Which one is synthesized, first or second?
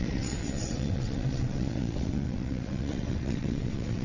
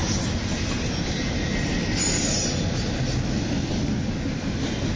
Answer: first